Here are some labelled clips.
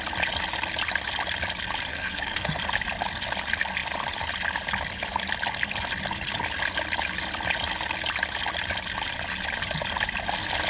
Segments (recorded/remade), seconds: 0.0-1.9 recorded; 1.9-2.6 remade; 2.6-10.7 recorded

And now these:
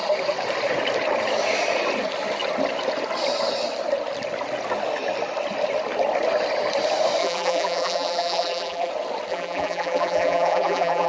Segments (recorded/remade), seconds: 0.0-7.2 recorded; 7.2-8.9 remade; 8.9-9.3 recorded; 9.3-11.1 remade